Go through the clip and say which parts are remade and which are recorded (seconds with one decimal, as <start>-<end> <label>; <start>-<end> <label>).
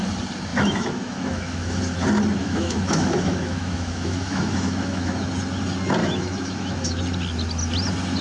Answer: 0.0-0.5 recorded; 0.5-1.8 remade; 1.8-2.4 recorded; 2.4-5.3 remade; 5.3-6.0 recorded; 6.0-7.0 remade; 7.0-8.2 recorded